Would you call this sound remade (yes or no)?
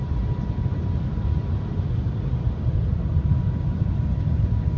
no